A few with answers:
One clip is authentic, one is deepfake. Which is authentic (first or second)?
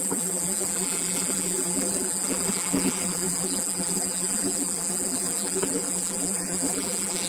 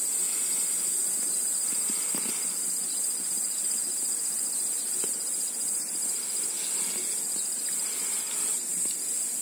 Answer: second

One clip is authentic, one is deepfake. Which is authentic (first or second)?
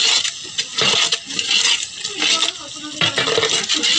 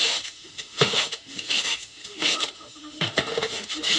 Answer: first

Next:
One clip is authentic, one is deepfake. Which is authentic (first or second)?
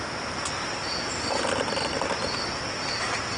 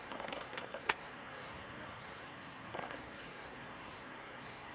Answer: first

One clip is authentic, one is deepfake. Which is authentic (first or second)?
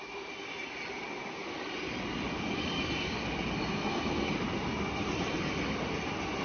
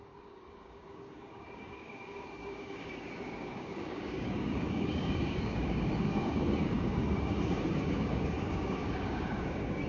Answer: first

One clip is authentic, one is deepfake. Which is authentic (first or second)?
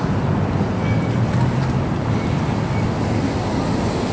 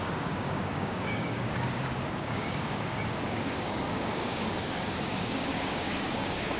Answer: first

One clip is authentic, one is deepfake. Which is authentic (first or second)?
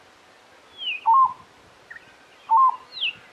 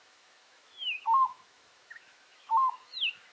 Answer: first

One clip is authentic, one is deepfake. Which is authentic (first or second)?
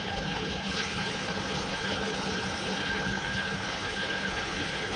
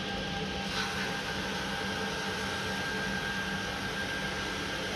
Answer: second